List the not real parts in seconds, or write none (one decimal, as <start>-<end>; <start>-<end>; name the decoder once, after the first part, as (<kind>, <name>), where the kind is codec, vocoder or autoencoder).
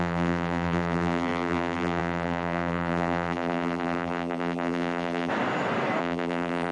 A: 0.0-5.3 (vocoder, BigVGAN v2); 6.0-6.7